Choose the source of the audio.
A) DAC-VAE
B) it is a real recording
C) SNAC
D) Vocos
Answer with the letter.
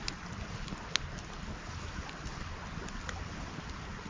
B